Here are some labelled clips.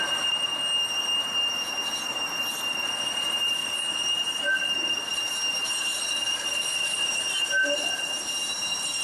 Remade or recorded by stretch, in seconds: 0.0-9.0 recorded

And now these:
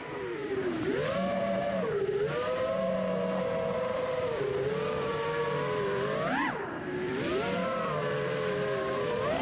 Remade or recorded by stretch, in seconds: 0.0-9.4 remade

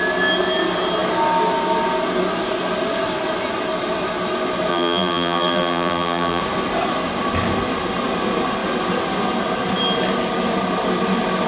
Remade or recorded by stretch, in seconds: 0.0-4.7 recorded; 4.7-6.4 remade; 6.4-11.5 recorded

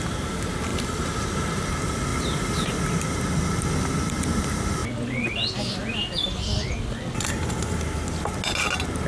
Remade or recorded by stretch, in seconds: 0.0-0.7 recorded; 0.7-1.7 remade; 1.7-9.1 recorded

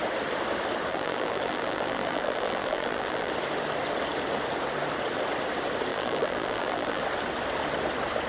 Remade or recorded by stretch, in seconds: 0.0-0.9 recorded; 0.9-3.3 remade; 3.3-5.9 recorded; 5.9-7.0 remade; 7.0-8.3 recorded

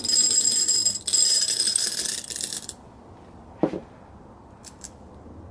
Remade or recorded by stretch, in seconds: 0.0-5.5 remade